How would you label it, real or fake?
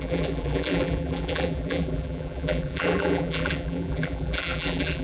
fake